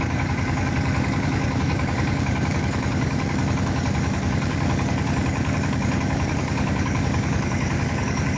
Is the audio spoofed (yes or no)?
yes